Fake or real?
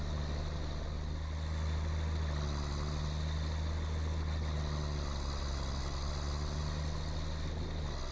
real